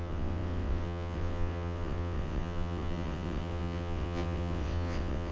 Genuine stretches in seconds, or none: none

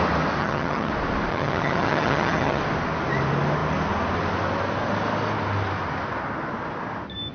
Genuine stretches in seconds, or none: 0.0-0.4; 0.9-1.3; 2.6-7.3

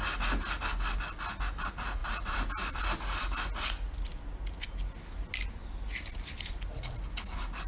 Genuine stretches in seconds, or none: 0.0-7.7